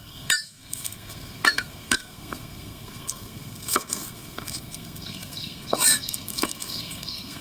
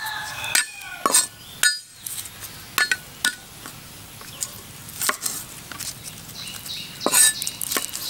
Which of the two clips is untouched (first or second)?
second